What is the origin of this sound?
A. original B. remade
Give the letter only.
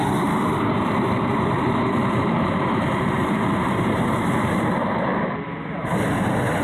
B